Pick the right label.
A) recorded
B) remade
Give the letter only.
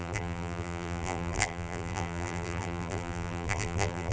B